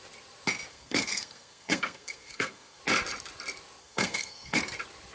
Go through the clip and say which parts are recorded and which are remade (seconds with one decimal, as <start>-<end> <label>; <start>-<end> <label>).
0.0-0.7 recorded; 0.7-2.8 remade; 2.8-3.8 recorded; 3.8-4.6 remade; 4.6-5.1 recorded